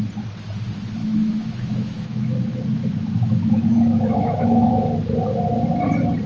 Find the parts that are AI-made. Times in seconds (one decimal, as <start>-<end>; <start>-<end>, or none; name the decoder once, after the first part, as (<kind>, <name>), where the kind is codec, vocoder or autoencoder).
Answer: 1.0-4.7 (autoencoder, DAC-VAE)

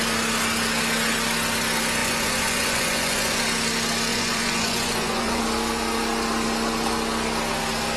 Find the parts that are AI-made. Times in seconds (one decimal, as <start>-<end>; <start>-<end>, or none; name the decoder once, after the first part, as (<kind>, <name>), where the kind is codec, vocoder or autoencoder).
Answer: 2.0-3.4 (vocoder, Vocos); 4.1-5.4

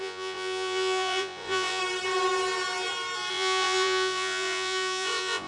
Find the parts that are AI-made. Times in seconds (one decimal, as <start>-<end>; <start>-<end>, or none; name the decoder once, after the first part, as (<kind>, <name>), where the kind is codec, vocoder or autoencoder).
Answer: 0.0-1.8 (vocoder, Vocos); 3.3-5.5

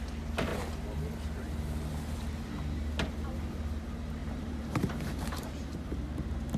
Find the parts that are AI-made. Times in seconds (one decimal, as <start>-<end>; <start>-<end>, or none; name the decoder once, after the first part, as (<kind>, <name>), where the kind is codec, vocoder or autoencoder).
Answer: 4.2-6.6 (vocoder, BigVGAN v2)